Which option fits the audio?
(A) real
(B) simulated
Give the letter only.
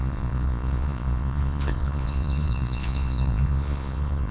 B